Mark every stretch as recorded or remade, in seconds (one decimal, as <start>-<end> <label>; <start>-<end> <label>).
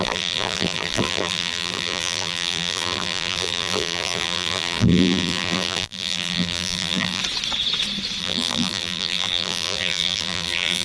0.0-7.2 remade; 7.2-8.2 recorded; 8.2-10.8 remade